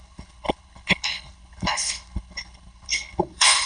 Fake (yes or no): yes